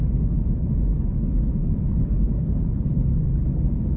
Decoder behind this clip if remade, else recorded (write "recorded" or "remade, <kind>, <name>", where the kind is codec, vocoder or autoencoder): remade, codec, HILCodec